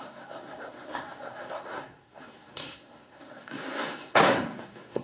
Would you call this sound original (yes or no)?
no